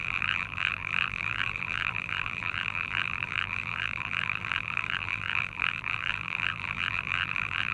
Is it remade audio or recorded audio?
remade